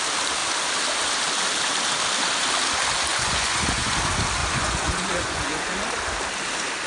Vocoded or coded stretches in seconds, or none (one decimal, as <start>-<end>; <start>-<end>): 3.1-4.0; 4.4-5.7